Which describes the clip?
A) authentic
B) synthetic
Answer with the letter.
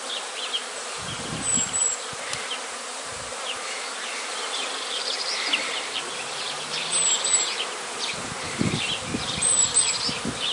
B